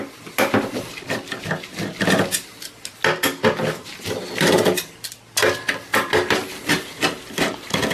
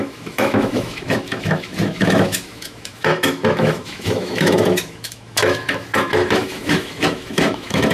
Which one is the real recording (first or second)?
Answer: first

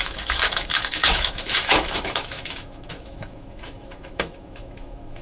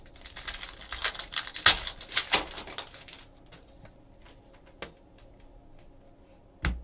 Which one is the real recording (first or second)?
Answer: second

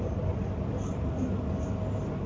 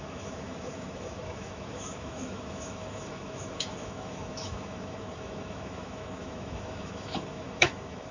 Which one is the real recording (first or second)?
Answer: first